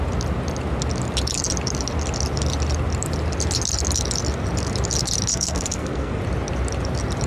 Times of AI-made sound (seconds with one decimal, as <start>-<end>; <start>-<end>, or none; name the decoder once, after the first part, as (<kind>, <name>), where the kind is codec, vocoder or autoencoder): 5.3-6.2 (codec, SNAC)